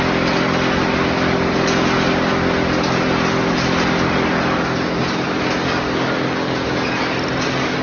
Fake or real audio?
real